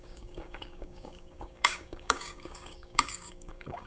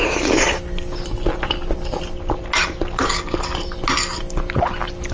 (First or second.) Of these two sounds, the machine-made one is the first